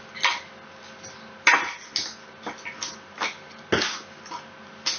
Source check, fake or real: real